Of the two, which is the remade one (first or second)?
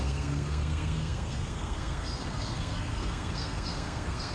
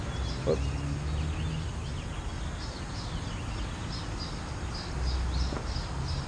first